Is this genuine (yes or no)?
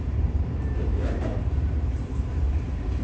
no